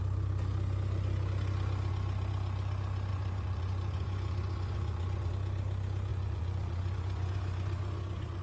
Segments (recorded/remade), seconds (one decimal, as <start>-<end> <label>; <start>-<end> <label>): 0.0-3.1 recorded; 3.1-5.3 remade; 5.3-6.1 recorded; 6.1-8.4 remade